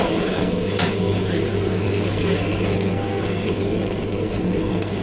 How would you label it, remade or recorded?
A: remade